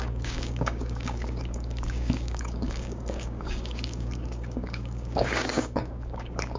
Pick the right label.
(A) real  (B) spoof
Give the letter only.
B